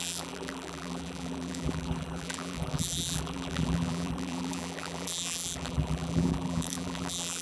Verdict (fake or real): fake